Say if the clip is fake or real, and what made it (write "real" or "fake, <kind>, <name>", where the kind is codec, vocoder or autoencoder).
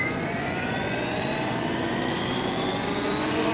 fake, vocoder, Vocos